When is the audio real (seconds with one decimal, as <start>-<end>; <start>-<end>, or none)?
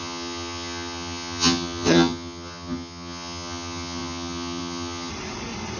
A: 5.1-5.8